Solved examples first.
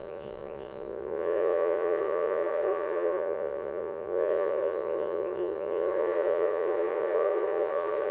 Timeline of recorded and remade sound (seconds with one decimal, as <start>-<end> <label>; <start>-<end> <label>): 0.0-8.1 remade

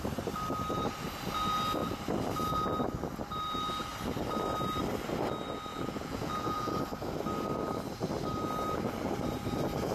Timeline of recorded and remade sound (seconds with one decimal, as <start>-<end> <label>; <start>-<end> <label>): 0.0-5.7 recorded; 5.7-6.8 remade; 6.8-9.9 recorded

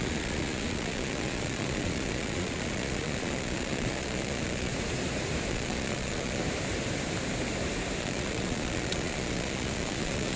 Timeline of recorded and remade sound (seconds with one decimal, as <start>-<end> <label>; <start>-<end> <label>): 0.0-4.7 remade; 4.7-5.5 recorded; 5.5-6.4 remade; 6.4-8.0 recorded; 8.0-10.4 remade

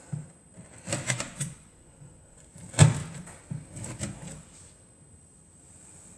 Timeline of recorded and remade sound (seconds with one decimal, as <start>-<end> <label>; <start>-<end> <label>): 0.0-1.0 recorded; 1.0-2.5 remade; 2.5-6.2 recorded